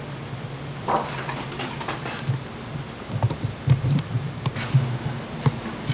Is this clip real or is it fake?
real